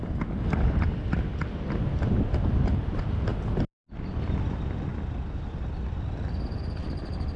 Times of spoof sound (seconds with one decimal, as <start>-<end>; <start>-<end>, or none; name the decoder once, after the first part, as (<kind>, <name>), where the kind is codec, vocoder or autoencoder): none